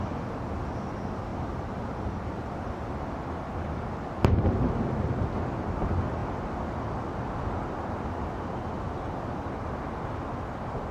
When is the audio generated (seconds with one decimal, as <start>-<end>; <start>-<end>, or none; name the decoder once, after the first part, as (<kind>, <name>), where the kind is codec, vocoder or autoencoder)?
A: 1.3-5.3 (vocoder, BigVGAN v2)